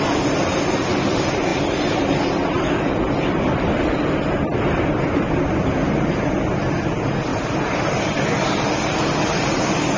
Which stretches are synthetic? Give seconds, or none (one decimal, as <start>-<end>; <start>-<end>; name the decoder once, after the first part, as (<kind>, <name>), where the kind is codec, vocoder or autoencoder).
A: 1.5-5.3 (vocoder, BigVGAN v2); 7.3-7.9